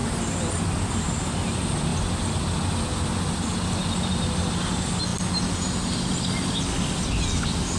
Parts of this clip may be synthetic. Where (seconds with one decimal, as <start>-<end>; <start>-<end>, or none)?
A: none